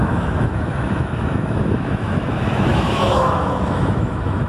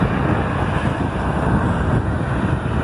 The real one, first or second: second